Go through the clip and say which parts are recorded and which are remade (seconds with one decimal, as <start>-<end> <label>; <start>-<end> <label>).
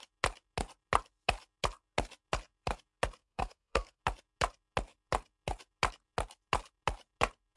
0.0-3.2 recorded; 3.2-4.0 remade; 4.0-7.6 recorded